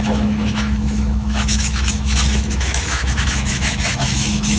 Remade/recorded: remade